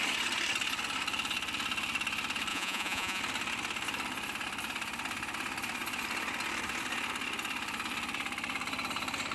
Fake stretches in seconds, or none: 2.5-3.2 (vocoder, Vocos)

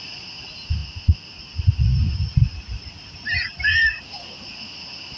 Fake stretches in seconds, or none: none